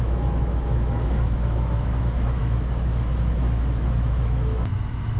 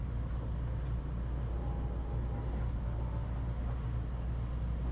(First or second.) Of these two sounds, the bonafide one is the second